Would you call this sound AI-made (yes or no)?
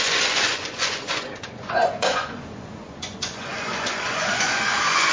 yes